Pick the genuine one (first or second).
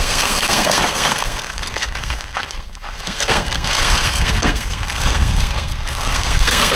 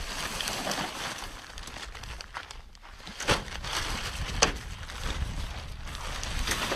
second